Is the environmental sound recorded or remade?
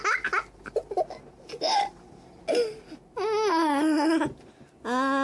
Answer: recorded